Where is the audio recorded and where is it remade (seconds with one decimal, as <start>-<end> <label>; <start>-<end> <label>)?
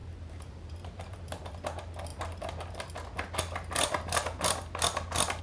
0.0-1.5 remade; 1.5-5.4 recorded